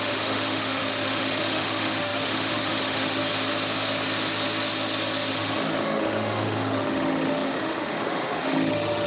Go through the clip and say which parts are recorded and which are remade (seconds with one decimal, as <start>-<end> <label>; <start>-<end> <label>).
0.0-3.2 remade; 3.2-5.3 recorded; 5.3-9.1 remade